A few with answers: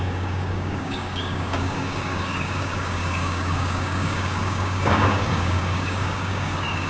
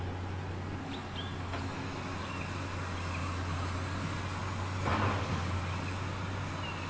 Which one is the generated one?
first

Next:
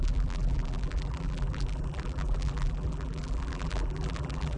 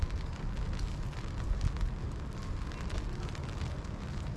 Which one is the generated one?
first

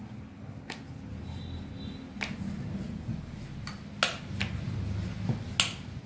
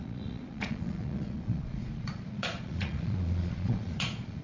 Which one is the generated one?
second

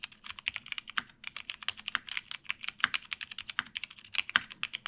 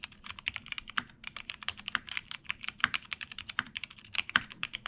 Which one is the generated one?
second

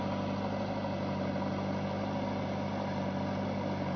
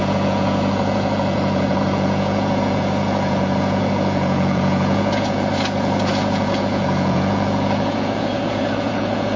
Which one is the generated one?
second